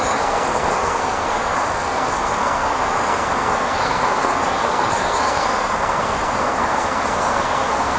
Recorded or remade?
remade